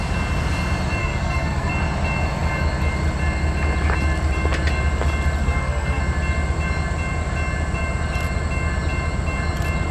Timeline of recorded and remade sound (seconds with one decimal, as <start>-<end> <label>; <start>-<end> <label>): 0.0-1.0 recorded; 1.0-1.7 remade; 1.7-5.4 recorded; 5.4-6.0 remade; 6.0-9.9 recorded